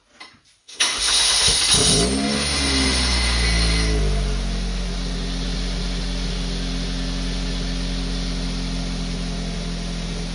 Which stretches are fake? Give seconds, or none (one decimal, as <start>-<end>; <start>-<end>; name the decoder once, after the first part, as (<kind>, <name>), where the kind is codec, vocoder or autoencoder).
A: 0.6-1.6 (autoencoder, DAC-VAE)